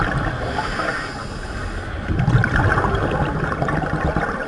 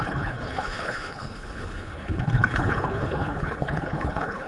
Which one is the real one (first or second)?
first